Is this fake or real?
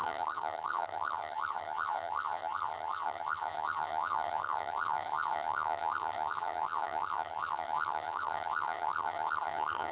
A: fake